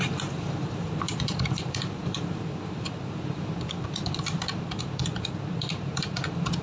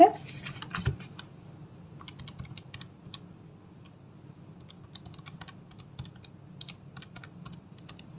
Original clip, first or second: second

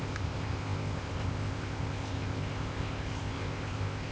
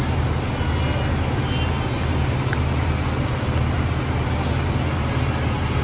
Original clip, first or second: second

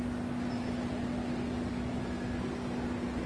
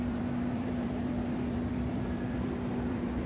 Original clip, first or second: first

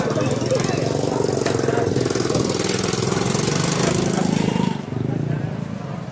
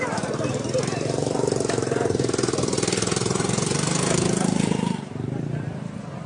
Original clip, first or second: first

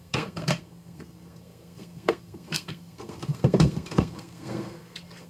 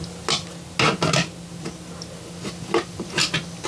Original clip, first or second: second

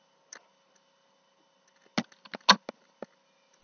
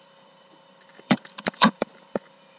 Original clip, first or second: first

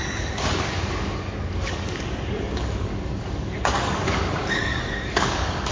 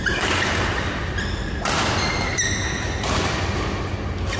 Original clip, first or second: second